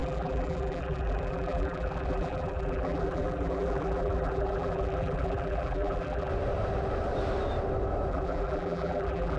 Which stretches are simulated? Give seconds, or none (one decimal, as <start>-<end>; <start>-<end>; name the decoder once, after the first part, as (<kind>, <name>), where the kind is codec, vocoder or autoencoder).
0.0-6.3 (vocoder, BigVGAN v2); 8.1-9.4